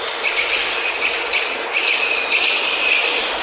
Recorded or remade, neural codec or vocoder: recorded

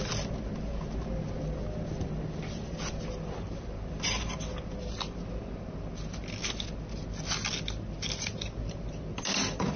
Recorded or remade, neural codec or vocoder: recorded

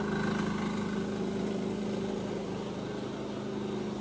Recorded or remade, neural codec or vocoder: recorded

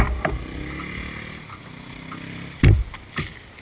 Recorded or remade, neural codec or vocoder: recorded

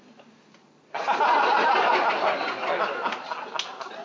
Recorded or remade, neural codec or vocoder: recorded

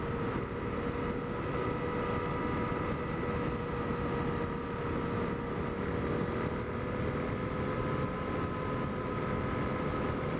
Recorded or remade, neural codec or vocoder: recorded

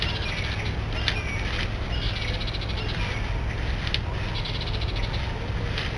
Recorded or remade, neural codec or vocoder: recorded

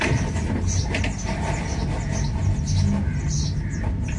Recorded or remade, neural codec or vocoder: recorded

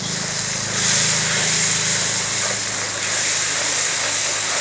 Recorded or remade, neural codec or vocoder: recorded